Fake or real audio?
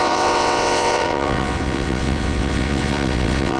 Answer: fake